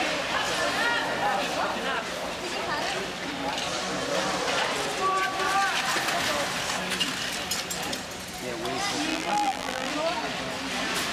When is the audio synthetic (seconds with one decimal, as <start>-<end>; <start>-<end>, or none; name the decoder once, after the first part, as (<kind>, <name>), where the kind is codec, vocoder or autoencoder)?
9.1-9.9 (vocoder, BigVGAN v2)